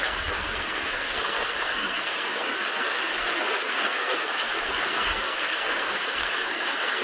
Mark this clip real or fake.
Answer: fake